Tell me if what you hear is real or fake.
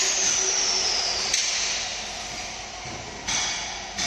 real